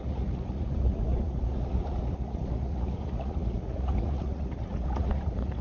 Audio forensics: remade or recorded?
remade